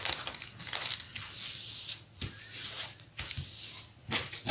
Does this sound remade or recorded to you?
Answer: recorded